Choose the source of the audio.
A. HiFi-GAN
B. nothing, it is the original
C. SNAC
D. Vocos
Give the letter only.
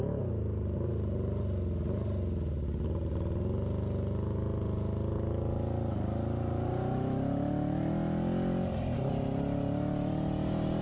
B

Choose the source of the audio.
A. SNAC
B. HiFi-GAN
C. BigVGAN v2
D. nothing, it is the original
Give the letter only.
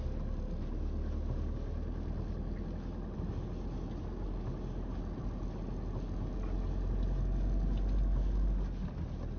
D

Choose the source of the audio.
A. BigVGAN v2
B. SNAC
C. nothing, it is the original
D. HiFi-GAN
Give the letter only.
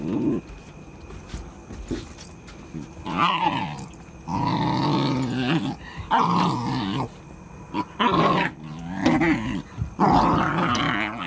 C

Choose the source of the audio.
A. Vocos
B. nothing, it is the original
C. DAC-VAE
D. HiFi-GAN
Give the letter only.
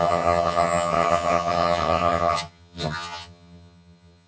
D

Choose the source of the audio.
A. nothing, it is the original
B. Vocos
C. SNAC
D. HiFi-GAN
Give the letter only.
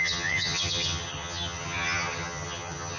D